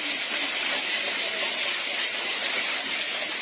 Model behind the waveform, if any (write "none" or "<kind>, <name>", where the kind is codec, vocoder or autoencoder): none